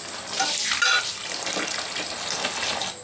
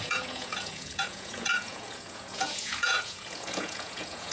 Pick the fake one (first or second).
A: second